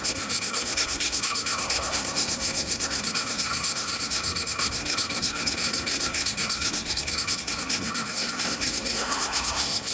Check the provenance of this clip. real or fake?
fake